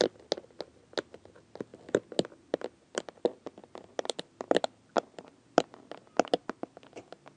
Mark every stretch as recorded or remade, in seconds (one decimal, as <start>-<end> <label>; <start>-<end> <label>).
0.0-7.4 recorded